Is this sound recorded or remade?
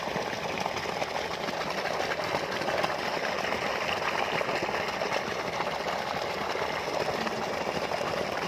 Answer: recorded